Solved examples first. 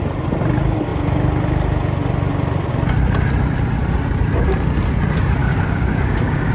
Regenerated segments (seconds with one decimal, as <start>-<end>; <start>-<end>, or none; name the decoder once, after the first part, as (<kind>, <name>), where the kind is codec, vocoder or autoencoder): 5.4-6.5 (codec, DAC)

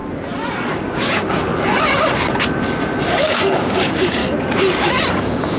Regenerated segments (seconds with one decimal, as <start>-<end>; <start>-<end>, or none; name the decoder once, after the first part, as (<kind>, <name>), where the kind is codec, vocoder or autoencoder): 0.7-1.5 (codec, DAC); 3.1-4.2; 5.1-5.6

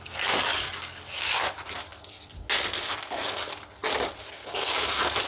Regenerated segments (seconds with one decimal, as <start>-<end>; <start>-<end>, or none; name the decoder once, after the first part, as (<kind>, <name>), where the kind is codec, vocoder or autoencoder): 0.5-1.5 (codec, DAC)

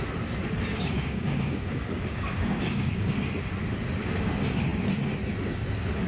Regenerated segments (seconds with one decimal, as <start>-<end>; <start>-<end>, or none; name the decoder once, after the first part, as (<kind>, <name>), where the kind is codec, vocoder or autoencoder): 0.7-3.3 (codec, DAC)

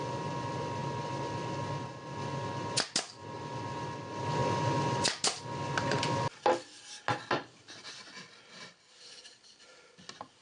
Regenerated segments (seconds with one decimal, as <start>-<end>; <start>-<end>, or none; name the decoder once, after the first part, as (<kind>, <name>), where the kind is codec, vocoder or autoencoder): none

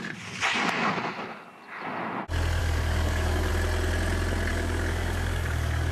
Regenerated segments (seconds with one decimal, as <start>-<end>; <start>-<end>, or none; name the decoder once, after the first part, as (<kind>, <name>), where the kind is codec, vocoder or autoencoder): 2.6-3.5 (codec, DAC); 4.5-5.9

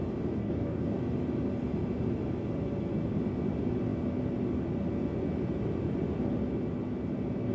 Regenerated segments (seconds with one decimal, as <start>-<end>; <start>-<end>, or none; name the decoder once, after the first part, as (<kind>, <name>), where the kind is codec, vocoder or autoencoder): 0.4-1.0 (codec, DAC)

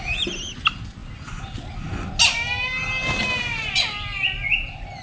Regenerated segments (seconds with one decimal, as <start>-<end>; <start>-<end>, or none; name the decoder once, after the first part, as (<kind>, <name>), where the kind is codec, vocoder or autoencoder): none